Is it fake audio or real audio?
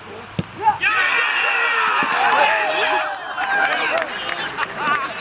real